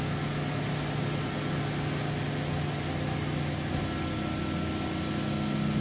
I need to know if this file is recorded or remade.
recorded